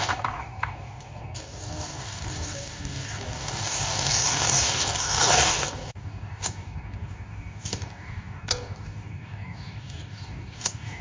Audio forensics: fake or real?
fake